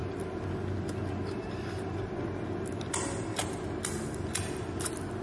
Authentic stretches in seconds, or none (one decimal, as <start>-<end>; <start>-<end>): 0.0-1.4